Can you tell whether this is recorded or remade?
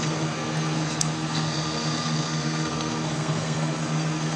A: remade